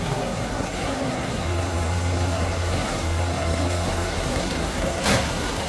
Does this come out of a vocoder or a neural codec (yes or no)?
yes